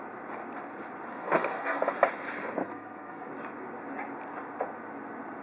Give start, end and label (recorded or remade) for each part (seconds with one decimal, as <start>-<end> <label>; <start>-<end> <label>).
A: 0.0-1.1 recorded; 1.1-1.9 remade; 1.9-2.6 recorded; 2.6-3.3 remade; 3.3-5.4 recorded